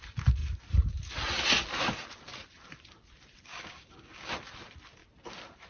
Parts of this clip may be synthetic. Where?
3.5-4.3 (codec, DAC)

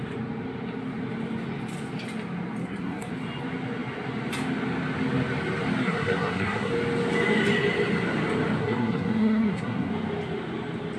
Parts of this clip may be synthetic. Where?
2.6-3.1 (codec, SNAC); 5.8-6.7; 8.6-9.9

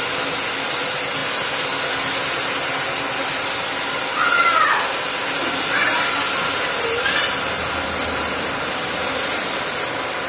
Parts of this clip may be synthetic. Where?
none

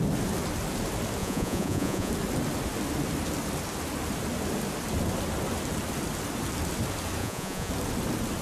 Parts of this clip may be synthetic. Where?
1.2-2.1 (vocoder, Vocos); 7.2-7.7

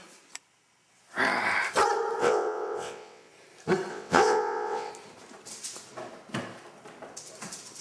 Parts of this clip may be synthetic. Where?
2.2-3.3 (vocoder, WaveNeXt); 3.9-4.9

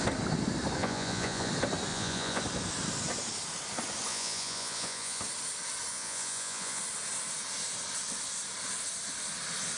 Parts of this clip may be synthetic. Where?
0.8-1.5 (vocoder, Vocos); 1.9-2.4; 4.1-5.2; 5.9-6.8